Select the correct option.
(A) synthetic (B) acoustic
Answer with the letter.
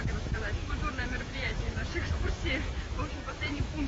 A